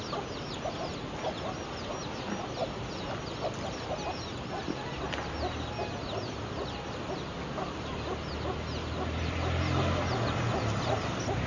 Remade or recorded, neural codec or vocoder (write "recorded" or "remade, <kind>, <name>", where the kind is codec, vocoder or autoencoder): recorded